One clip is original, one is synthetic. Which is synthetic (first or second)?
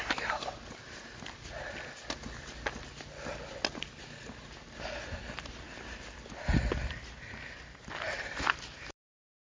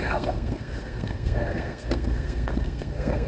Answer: second